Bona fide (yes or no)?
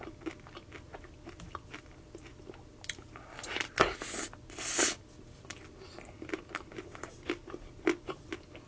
yes